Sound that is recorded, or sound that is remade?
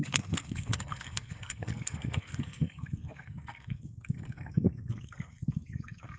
remade